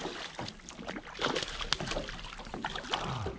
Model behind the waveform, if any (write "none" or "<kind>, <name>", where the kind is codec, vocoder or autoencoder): none